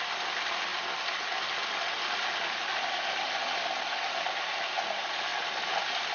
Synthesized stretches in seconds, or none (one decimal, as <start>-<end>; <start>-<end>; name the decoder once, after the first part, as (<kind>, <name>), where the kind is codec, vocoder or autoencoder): none